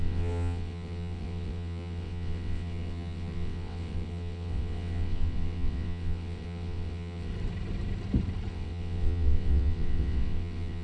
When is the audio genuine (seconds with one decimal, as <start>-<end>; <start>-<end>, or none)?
7.3-8.5